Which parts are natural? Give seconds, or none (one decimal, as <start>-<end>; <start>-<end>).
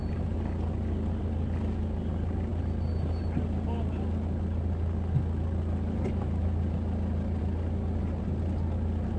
0.0-9.2